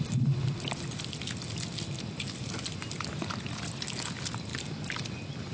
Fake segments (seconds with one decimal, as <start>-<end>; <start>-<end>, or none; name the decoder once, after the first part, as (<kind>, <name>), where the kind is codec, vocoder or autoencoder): none